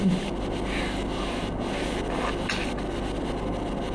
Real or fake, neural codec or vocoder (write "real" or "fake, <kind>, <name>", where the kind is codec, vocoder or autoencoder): real